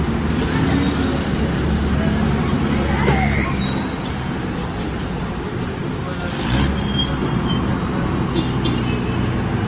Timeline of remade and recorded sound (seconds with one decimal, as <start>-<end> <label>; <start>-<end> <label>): 0.0-9.7 recorded